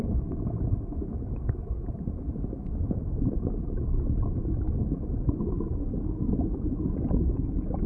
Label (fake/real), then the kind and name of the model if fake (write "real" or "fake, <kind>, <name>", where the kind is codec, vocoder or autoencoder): fake, autoencoder, DAC-VAE